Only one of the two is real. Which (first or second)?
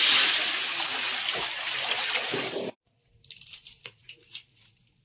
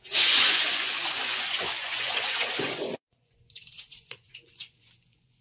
first